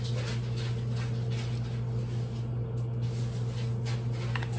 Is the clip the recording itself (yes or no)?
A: yes